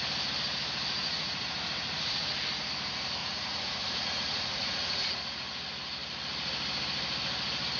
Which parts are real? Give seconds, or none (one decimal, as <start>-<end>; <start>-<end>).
0.0-1.0; 2.3-3.2; 5.2-7.8